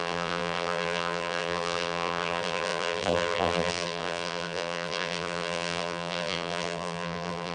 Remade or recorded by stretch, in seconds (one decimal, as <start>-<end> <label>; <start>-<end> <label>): 0.0-7.5 remade